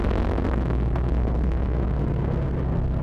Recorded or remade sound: remade